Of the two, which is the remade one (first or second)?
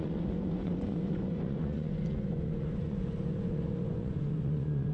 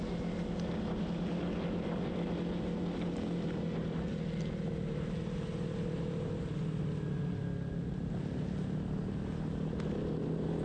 first